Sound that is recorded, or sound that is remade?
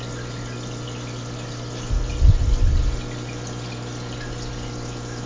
recorded